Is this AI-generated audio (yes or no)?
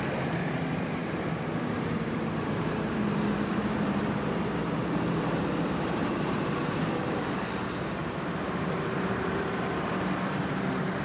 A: yes